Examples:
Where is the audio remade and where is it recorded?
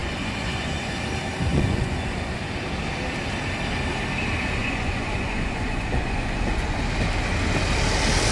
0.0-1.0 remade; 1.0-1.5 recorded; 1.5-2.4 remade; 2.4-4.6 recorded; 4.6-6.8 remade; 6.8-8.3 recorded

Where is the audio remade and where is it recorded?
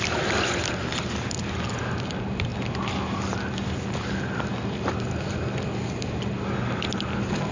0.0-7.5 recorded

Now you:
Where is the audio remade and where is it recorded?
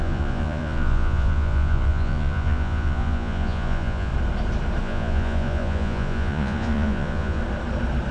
0.0-4.1 remade; 4.1-4.8 recorded; 4.8-7.4 remade; 7.4-8.1 recorded